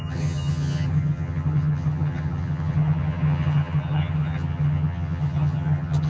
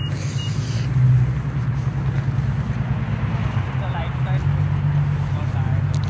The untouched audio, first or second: second